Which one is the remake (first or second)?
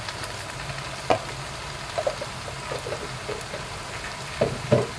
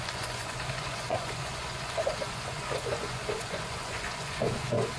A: second